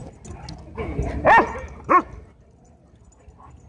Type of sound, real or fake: real